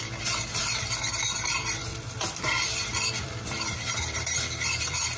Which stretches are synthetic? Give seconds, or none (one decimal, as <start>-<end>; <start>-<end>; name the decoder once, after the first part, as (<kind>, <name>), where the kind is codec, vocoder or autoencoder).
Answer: 1.9-4.8 (vocoder, BigVGAN v2)